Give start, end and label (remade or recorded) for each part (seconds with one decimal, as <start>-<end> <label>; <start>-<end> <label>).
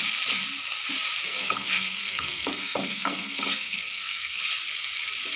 0.0-1.2 recorded; 1.2-4.4 remade; 4.4-5.4 recorded